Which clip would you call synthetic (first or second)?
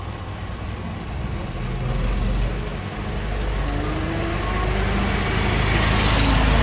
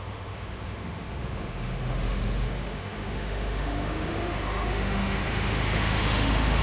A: second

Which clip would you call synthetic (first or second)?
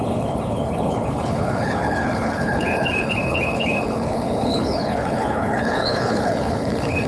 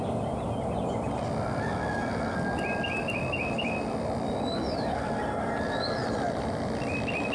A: first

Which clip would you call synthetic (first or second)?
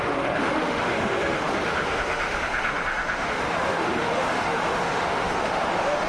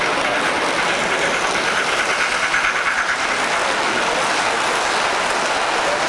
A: first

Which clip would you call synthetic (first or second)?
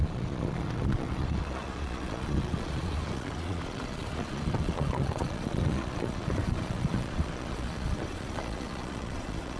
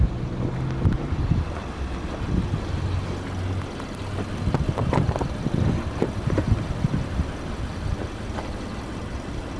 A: first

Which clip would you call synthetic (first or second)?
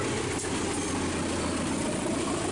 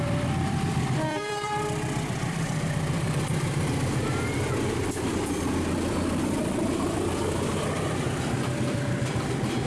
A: second